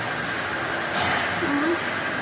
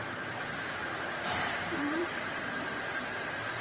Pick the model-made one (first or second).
second